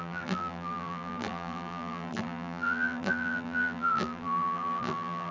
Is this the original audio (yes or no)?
no